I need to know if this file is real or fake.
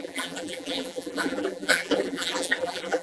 fake